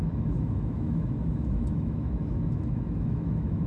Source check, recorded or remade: remade